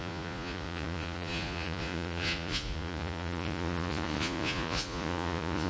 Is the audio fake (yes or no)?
yes